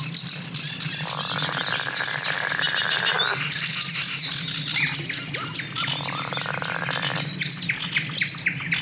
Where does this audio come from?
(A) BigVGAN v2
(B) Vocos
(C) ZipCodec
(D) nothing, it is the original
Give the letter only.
D